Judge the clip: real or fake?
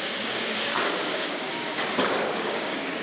fake